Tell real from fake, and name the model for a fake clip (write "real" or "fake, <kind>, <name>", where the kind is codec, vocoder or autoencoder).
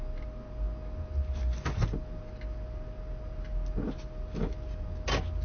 real